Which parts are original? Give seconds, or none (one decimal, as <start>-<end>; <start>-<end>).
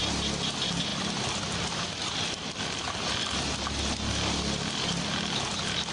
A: 0.0-0.9; 2.6-5.9